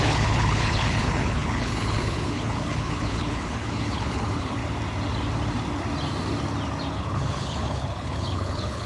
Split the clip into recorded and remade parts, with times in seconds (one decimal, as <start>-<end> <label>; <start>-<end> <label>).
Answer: 0.0-4.6 remade; 4.6-6.9 recorded; 6.9-8.9 remade